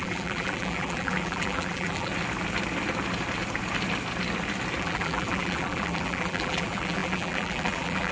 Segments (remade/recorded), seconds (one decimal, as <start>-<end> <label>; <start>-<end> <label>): 0.0-2.1 remade; 2.1-4.8 recorded; 4.8-8.1 remade